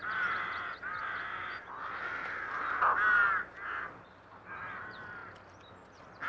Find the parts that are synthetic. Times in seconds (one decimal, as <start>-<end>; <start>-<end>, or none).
none